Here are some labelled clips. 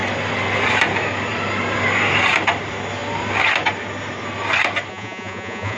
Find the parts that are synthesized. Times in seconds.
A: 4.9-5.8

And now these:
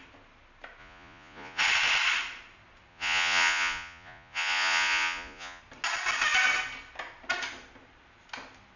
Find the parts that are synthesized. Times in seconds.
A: 0.8-1.6; 2.9-5.6

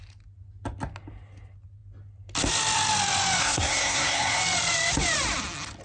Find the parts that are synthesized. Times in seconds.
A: 3.4-4.4

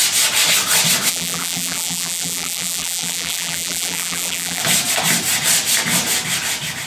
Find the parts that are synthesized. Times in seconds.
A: 1.1-4.6